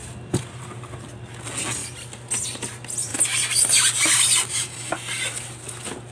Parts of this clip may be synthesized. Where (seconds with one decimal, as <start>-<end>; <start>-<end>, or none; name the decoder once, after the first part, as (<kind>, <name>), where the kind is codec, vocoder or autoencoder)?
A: none